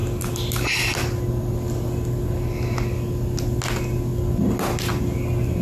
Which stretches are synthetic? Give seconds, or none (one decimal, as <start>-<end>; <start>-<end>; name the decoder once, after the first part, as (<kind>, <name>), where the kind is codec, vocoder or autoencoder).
none